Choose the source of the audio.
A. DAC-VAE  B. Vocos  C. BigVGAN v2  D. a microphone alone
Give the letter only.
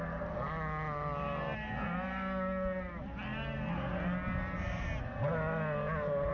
D